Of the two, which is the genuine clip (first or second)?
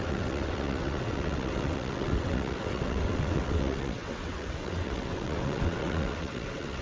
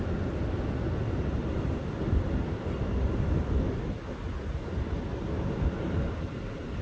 second